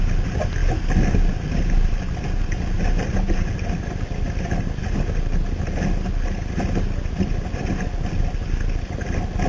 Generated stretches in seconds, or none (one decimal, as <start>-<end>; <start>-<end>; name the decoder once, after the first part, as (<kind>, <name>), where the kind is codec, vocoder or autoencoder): none